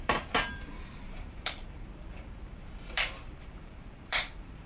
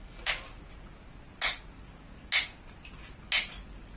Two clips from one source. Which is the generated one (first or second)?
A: first